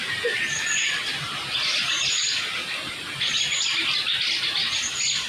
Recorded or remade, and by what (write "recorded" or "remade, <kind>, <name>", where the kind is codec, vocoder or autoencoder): recorded